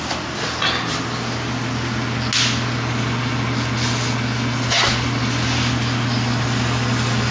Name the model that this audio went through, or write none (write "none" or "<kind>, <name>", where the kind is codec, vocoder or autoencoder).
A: none